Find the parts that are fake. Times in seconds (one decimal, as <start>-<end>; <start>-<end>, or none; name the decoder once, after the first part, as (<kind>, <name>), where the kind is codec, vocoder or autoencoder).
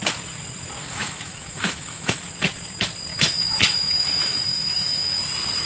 0.8-2.2 (autoencoder, DAC-VAE); 3.1-5.2